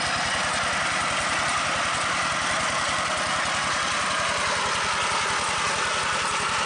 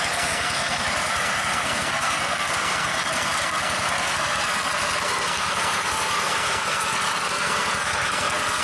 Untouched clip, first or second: first